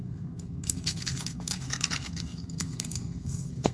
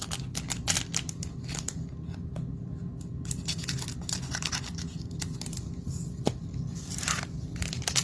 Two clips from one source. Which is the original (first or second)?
second